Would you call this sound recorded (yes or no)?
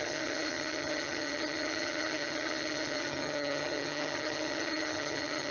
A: no